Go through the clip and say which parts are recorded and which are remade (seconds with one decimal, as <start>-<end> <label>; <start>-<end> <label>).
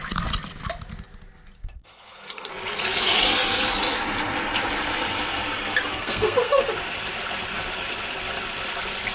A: 0.0-1.6 recorded; 1.6-2.5 remade; 2.5-5.9 recorded; 5.9-6.7 remade; 6.7-9.1 recorded